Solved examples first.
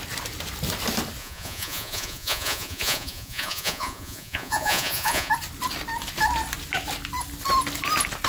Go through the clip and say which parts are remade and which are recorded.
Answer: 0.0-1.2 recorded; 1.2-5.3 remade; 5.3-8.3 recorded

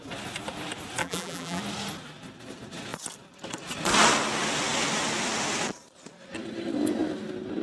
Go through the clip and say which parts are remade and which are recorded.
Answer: 0.0-1.0 recorded; 1.0-1.6 remade; 1.6-7.6 recorded